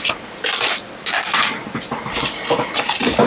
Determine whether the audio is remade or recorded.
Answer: recorded